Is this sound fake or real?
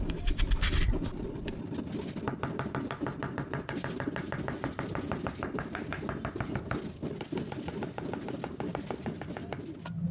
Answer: real